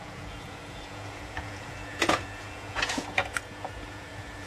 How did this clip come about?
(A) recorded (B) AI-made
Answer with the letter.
B